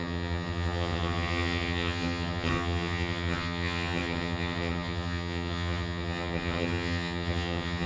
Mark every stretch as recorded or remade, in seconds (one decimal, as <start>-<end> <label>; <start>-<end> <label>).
0.0-7.9 remade